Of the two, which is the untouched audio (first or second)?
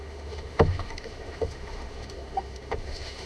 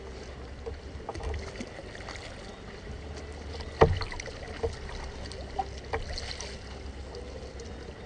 second